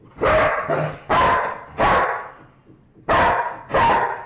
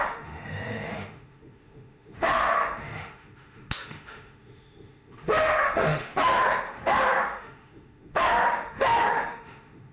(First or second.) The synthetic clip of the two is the second